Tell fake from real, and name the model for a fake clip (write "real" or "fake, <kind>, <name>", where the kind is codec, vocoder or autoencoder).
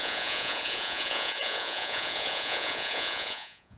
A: fake, vocoder, Vocos